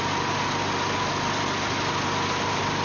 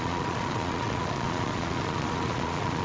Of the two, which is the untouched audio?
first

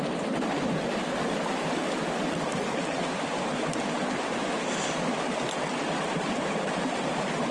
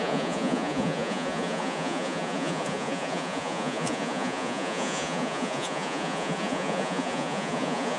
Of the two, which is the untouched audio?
first